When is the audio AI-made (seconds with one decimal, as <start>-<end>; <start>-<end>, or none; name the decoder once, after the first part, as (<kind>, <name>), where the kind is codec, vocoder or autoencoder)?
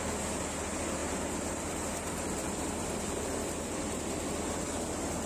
1.0-4.0 (vocoder, BigVGAN v2)